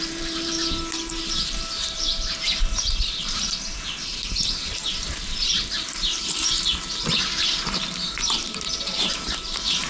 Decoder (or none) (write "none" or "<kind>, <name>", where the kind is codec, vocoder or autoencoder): vocoder, BigVGAN v2